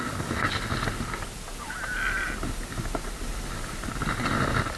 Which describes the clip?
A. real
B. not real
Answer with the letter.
A